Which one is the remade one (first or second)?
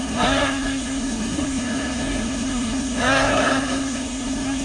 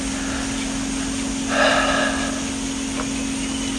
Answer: first